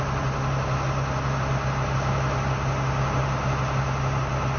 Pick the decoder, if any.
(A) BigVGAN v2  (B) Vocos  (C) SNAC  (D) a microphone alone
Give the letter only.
D